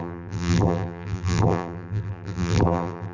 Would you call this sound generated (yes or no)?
yes